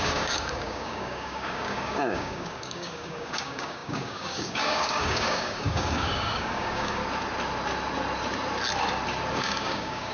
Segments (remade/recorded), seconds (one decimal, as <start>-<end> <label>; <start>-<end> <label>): 0.0-7.0 remade; 7.0-9.3 recorded; 9.3-10.1 remade